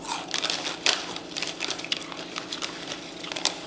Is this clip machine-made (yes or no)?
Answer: yes